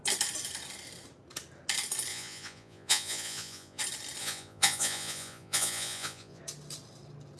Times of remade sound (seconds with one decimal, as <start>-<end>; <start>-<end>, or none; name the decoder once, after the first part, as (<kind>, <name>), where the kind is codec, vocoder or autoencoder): 2.1-3.8 (vocoder, Vocos); 4.2-6.4